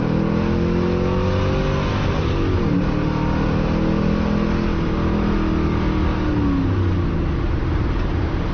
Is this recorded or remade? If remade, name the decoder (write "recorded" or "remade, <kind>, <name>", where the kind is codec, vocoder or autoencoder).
recorded